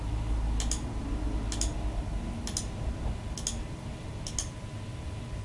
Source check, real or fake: real